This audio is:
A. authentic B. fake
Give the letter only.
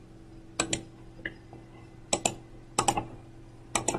A